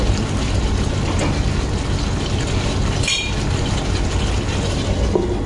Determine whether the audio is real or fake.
real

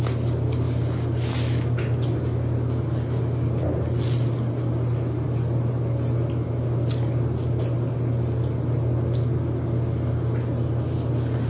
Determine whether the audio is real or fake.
real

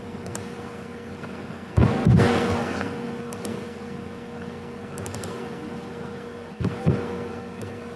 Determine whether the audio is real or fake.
fake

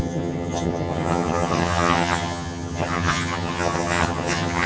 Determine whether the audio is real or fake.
fake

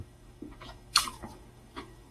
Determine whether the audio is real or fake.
fake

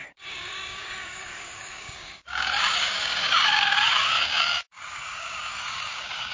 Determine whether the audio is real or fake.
fake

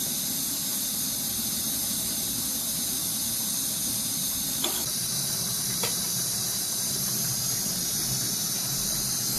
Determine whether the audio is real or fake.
fake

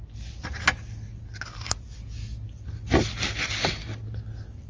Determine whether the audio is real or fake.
real